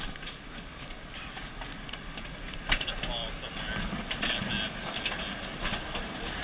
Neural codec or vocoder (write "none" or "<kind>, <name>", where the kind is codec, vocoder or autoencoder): none